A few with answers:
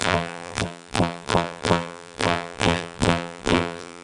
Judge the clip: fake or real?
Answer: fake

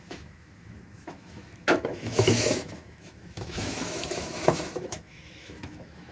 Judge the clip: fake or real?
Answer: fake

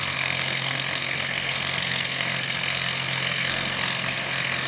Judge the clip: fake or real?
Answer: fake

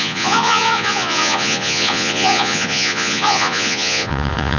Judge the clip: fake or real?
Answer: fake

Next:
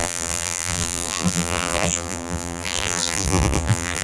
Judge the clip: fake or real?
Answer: fake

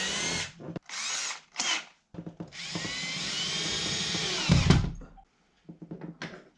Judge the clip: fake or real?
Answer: real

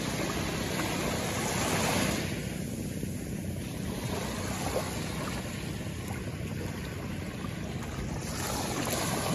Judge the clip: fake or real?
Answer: real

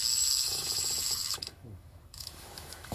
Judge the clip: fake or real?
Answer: fake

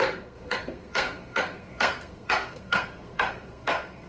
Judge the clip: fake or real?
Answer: fake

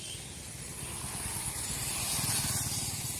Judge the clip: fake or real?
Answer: real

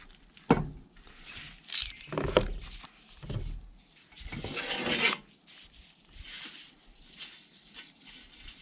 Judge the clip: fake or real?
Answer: real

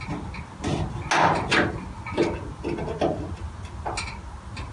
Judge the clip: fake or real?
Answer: real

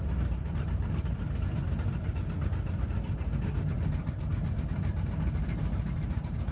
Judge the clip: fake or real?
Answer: real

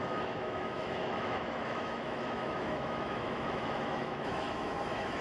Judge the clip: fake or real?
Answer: fake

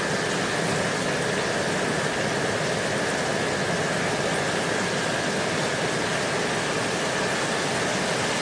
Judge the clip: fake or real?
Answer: real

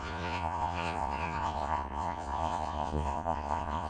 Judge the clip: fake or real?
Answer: fake